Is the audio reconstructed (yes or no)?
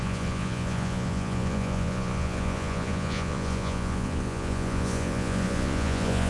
yes